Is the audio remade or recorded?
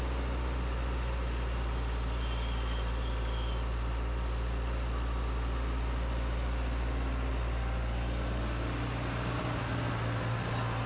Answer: recorded